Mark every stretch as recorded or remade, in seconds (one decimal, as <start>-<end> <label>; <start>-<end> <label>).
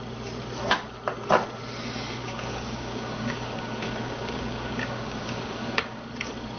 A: 0.0-2.2 recorded; 2.2-6.0 remade; 6.0-6.6 recorded